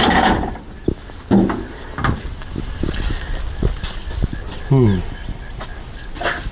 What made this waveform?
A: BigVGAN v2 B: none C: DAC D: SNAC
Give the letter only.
B